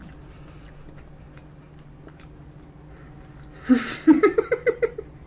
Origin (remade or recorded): recorded